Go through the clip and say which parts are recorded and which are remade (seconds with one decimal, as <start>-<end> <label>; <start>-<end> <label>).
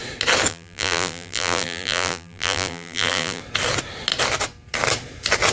0.0-0.5 recorded; 0.5-3.4 remade; 3.4-5.5 recorded